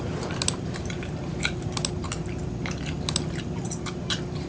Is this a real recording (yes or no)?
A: yes